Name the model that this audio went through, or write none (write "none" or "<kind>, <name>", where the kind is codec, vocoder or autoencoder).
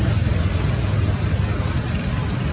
none